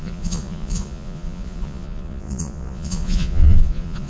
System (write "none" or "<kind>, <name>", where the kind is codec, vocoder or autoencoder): vocoder, Vocos